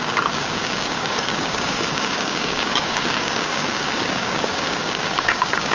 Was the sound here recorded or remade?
remade